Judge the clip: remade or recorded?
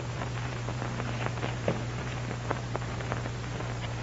remade